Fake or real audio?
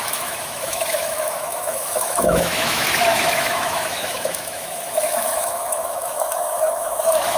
fake